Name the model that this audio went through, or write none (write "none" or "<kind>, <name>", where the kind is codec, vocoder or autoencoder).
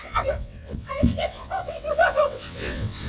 vocoder, WaveNeXt